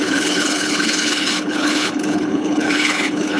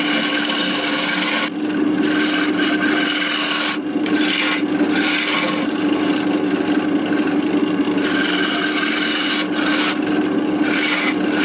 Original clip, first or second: second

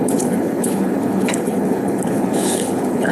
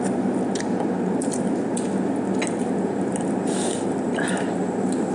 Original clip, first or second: second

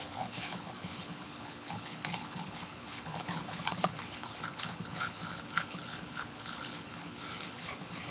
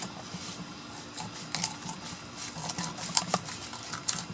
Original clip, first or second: second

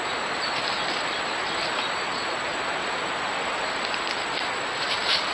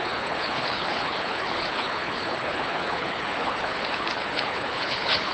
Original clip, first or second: first